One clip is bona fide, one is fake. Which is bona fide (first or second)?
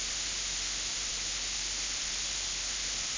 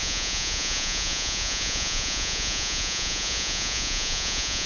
first